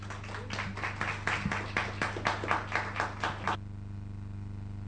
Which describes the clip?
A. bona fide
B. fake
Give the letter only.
A